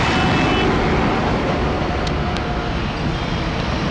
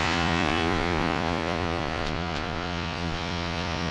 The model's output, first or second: second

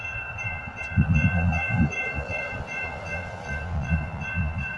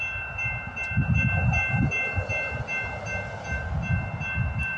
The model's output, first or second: first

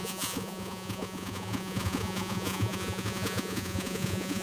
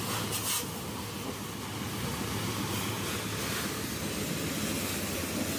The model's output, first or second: first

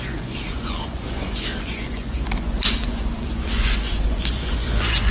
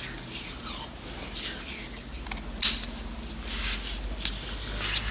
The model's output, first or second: first